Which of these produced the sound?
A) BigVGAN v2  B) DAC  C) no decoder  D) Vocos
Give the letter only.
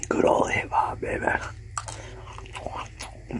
C